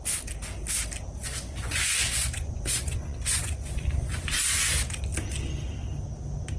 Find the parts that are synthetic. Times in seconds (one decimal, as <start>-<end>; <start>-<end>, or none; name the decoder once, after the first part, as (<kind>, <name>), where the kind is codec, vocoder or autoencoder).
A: 1.2-4.2 (vocoder, Vocos)